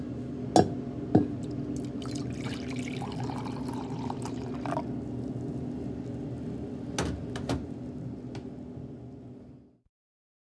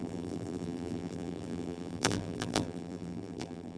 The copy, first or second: second